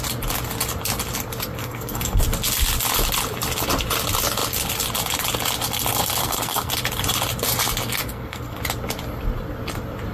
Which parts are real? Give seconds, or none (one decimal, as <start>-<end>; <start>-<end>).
0.0-1.6; 2.2-6.2; 6.7-8.0; 8.6-10.1